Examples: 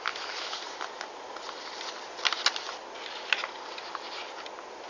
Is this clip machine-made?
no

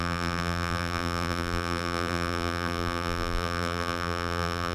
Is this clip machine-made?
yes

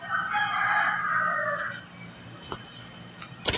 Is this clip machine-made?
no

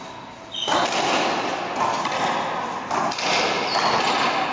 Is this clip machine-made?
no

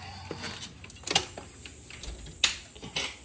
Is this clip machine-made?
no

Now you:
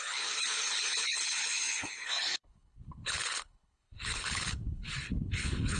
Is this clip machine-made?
yes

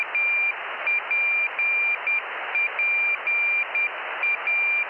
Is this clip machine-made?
no